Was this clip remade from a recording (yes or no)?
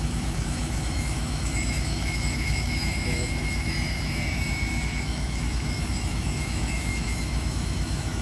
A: yes